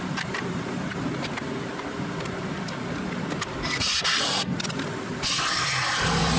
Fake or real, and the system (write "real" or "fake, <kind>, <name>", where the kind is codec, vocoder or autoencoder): real